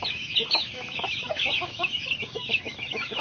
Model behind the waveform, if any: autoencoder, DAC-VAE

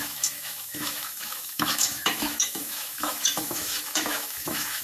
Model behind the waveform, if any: autoencoder, DAC-VAE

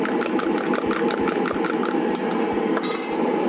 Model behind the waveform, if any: none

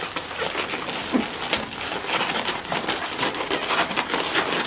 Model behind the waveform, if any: none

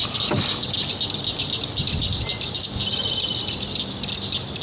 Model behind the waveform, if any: none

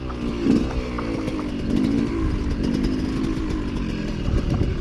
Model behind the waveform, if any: none